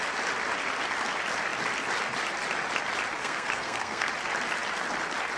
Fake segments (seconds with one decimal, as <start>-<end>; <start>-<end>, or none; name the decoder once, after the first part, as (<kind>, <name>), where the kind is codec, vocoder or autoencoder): 3.2-4.1 (codec, SNAC)